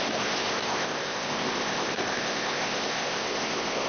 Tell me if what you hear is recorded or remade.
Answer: remade